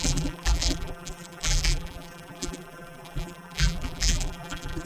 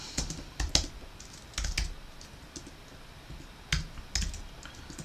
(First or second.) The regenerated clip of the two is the first